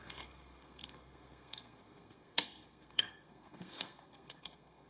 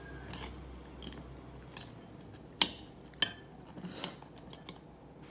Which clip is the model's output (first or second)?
first